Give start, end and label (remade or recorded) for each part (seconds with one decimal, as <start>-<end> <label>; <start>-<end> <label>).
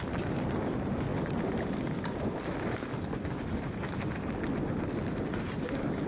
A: 0.0-6.1 recorded